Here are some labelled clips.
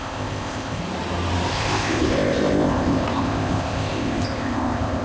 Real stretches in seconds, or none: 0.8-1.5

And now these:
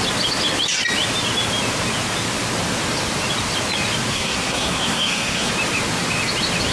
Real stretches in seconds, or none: 0.0-4.1; 5.5-6.7

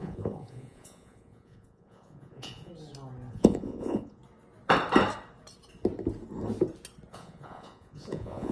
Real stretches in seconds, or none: 2.7-3.3; 4.2-7.1

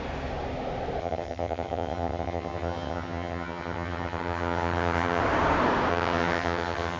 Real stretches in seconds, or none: 0.0-1.0; 5.2-5.9

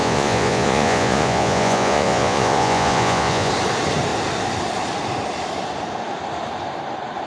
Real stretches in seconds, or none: 3.5-7.3

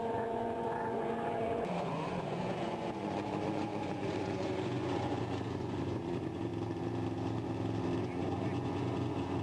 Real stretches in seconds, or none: 6.5-8.0